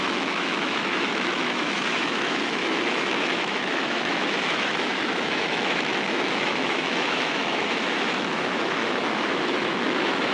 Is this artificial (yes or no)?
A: yes